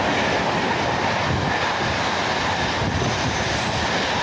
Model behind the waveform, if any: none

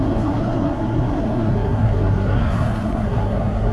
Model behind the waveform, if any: codec, SNAC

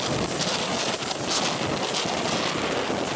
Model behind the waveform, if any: none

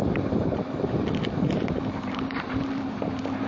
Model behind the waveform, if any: vocoder, BigVGAN v2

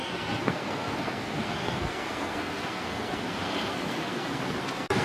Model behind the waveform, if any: codec, SNAC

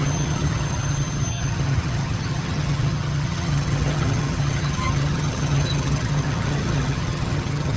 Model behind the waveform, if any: vocoder, HiFi-GAN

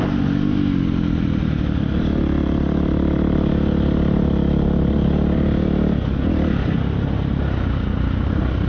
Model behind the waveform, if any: none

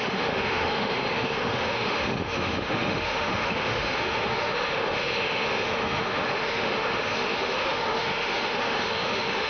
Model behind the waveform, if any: autoencoder, DAC-VAE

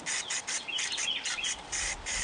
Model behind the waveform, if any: none